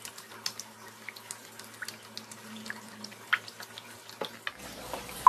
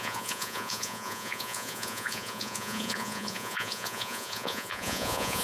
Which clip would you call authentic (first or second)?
first